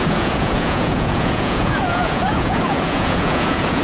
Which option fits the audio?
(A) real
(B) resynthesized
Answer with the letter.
B